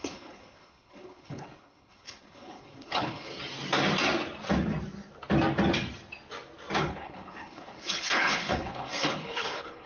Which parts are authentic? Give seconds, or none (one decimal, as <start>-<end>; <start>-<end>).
3.3-6.8